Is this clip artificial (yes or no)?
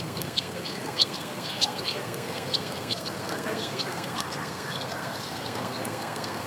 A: yes